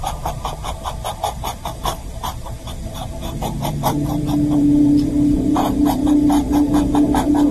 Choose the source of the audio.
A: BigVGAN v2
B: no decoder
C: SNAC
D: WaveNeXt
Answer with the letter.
A